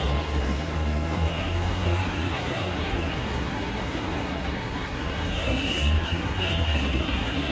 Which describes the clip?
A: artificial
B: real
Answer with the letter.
A